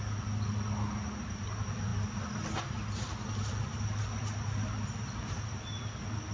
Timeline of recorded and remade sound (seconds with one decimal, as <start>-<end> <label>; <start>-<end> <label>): 0.0-6.3 recorded